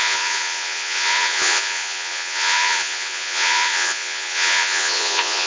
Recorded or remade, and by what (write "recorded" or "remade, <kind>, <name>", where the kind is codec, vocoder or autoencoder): remade, vocoder, Vocos